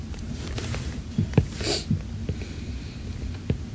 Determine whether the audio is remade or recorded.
remade